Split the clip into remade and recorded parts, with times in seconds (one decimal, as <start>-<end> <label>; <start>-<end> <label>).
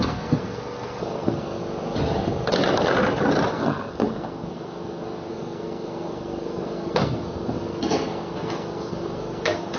0.0-1.6 remade; 1.6-3.5 recorded; 3.5-9.8 remade